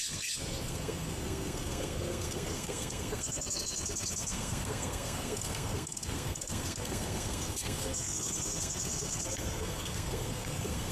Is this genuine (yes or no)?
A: no